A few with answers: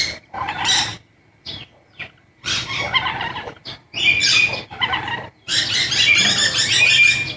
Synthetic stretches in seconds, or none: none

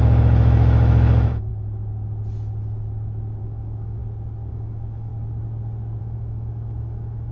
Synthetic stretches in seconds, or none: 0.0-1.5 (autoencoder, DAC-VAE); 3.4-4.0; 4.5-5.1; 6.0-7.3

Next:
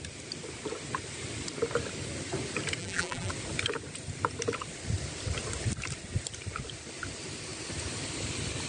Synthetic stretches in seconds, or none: 2.8-3.3 (vocoder, BigVGAN v2)

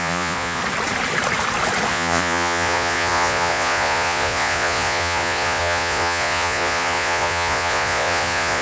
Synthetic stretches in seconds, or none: 0.0-0.6 (vocoder, Vocos); 1.9-8.6

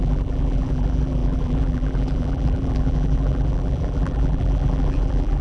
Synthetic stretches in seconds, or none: 0.0-5.4 (vocoder, BigVGAN v2)